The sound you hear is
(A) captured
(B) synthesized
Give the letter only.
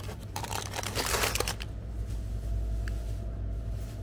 A